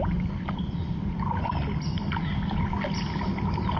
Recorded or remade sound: recorded